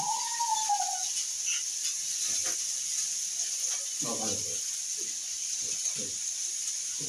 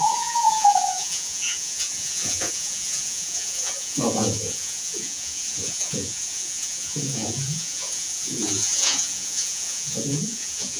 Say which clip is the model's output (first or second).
second